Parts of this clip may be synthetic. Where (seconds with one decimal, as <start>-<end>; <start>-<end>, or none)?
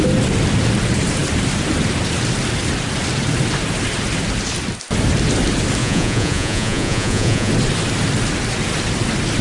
5.8-7.5